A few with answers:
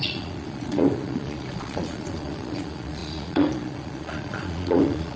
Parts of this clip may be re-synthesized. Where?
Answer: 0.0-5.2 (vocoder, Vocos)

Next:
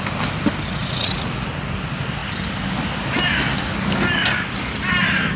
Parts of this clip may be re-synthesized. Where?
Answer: 0.8-1.5 (vocoder, Vocos)